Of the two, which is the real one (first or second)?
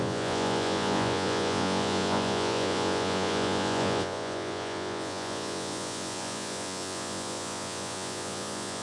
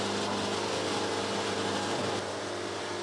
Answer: second